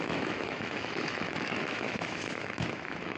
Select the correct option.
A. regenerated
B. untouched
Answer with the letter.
A